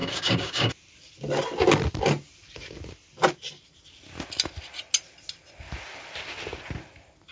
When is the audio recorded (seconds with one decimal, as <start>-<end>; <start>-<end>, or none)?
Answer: 0.7-7.3